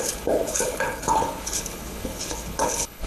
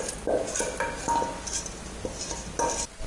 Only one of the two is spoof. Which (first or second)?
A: first